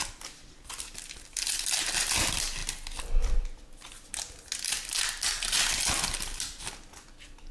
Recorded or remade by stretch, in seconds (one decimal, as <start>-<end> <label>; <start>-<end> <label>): 0.0-7.5 recorded